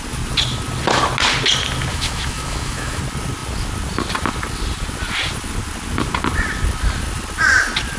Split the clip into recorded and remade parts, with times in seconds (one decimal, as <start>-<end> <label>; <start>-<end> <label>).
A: 0.0-1.9 recorded; 1.9-3.0 remade; 3.0-8.0 recorded